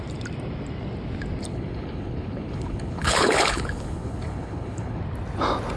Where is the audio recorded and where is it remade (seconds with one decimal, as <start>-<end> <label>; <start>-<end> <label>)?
0.0-1.5 recorded; 1.5-5.0 remade; 5.0-5.8 recorded